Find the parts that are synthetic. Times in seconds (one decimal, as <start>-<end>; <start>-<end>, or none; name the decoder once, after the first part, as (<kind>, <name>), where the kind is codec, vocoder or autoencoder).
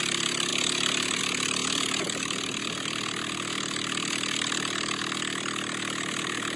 none